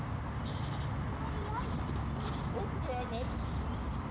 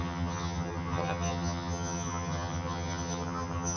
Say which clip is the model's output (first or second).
second